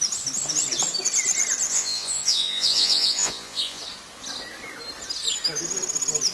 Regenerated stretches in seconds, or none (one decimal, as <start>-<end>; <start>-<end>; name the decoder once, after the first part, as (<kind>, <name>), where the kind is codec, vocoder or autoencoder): 1.7-3.8 (vocoder, Vocos)